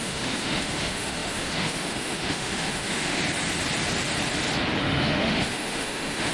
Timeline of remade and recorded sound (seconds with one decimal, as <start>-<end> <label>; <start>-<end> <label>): 0.0-3.2 remade; 3.2-4.8 recorded; 4.8-6.3 remade